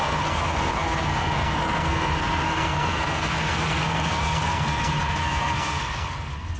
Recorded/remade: remade